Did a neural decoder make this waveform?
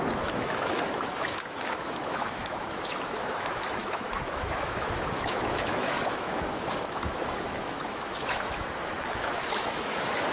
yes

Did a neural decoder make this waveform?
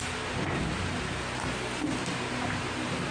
no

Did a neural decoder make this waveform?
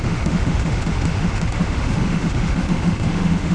yes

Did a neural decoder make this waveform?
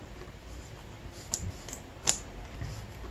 no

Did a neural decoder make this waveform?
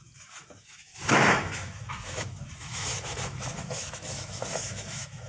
yes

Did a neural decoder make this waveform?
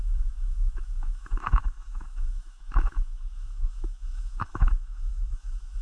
yes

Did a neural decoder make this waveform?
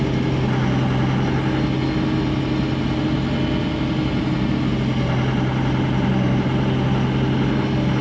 no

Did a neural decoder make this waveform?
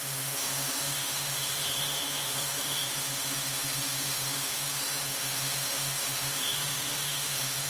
yes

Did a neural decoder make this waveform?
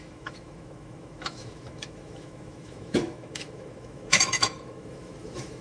yes